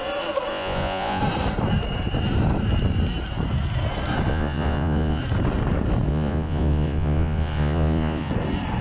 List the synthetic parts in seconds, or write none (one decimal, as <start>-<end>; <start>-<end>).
0.5-1.2; 4.3-5.2; 6.1-8.3